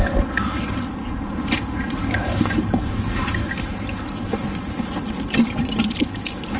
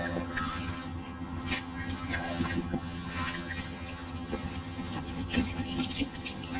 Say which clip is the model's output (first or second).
second